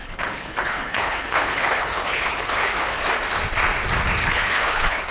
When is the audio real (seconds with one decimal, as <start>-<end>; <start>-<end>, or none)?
3.1-4.2